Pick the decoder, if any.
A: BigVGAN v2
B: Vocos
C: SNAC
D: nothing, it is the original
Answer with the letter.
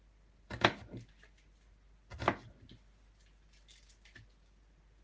D